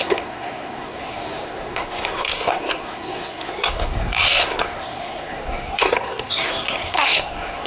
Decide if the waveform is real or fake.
fake